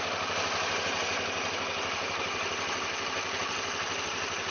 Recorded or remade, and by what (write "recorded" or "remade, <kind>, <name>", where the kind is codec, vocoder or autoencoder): recorded